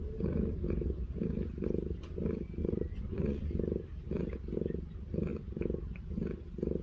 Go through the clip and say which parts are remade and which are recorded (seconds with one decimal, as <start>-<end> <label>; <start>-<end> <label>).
0.0-2.6 recorded; 2.6-3.4 remade; 3.4-6.8 recorded